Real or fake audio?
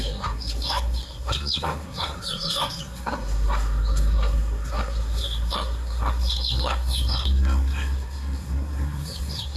fake